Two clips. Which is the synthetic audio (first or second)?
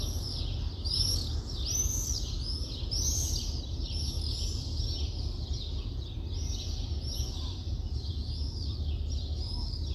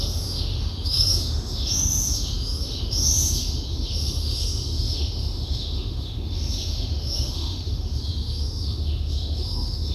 second